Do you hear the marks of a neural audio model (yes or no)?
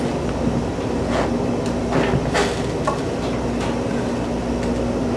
no